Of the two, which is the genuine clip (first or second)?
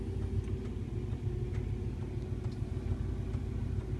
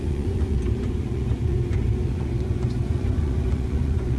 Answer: first